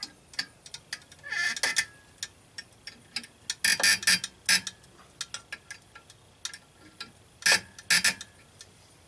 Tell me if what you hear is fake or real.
real